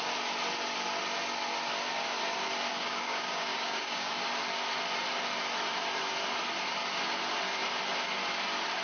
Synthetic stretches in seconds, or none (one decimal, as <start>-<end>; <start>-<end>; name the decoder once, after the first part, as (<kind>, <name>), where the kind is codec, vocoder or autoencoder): 2.7-4.1 (codec, DAC)